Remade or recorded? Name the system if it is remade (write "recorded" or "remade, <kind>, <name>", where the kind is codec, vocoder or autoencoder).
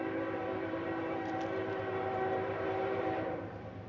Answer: remade, vocoder, BigVGAN v2